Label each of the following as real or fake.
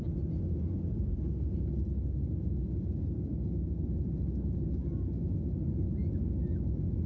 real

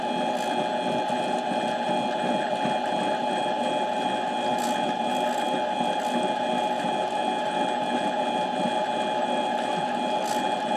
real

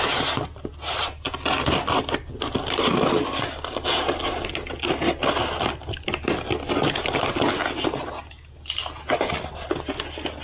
real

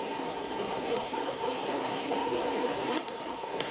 fake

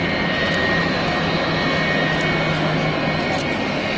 real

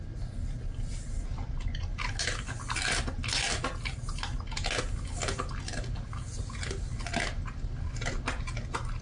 real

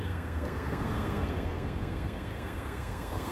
fake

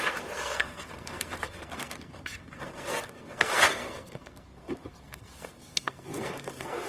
fake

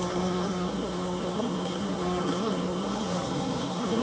fake